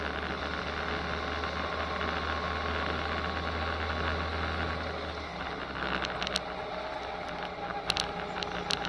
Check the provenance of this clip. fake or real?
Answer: real